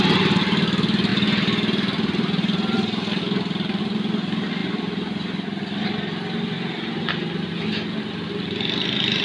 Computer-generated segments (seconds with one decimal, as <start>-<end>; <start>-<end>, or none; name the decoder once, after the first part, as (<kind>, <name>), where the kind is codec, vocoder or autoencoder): 1.1-3.8 (vocoder, BigVGAN v2); 4.6-5.6